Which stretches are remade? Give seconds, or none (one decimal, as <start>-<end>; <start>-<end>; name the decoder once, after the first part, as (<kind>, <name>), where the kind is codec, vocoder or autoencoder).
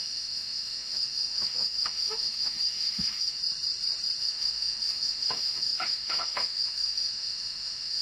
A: 0.0-3.4 (autoencoder, DAC-VAE); 4.2-8.0